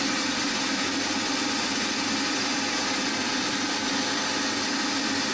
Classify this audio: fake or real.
real